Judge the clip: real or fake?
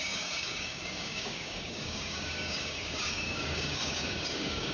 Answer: fake